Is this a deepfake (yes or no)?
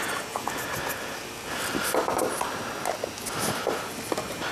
no